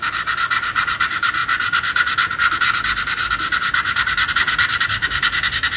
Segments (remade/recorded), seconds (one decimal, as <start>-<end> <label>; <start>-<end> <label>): 0.0-5.8 recorded